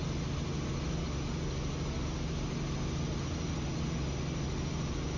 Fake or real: real